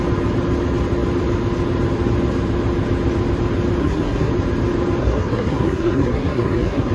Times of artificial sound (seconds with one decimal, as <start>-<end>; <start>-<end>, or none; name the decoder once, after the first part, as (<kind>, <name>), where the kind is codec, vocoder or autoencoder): 3.8-4.3 (codec, SNAC); 5.0-6.9

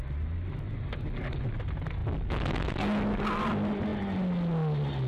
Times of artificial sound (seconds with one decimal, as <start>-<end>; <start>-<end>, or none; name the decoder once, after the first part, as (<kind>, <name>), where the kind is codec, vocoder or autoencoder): none

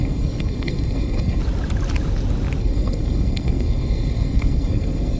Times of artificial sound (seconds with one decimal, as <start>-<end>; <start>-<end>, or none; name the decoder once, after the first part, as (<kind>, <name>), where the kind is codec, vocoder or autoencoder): 0.0-1.4 (codec, SNAC); 2.6-5.2

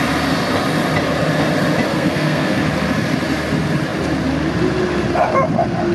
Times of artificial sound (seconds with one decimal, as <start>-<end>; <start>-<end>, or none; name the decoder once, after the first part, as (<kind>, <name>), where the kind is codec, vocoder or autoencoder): 1.9-2.6 (codec, SNAC)

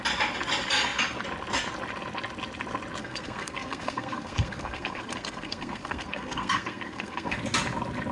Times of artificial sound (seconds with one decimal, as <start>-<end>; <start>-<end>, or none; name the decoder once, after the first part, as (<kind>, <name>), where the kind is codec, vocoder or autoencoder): 3.0-7.4 (codec, SNAC)

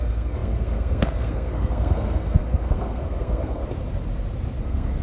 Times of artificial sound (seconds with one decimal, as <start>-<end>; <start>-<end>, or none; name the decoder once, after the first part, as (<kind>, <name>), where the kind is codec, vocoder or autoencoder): 0.0-3.6 (codec, SNAC); 4.6-5.0

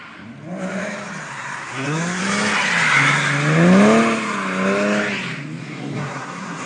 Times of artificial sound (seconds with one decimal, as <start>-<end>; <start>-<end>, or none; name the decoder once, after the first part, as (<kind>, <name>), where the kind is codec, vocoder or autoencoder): 1.3-2.2 (codec, SNAC); 5.6-6.7